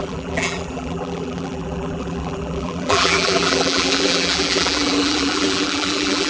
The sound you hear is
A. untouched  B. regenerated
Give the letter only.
B